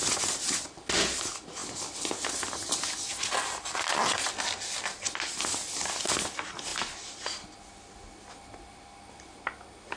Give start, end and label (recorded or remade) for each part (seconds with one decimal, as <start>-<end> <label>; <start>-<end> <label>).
0.0-10.0 recorded